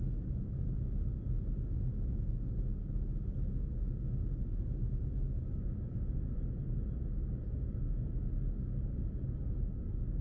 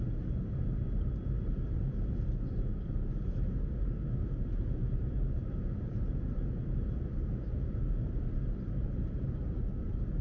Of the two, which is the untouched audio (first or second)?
first